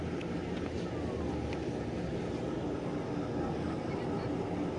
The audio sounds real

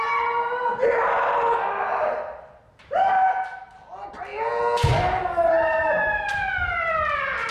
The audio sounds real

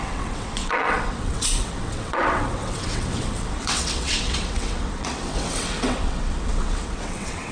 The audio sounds fake